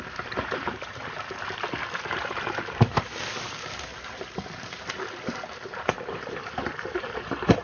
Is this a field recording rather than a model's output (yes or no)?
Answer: no